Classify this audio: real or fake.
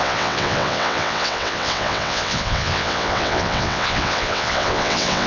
fake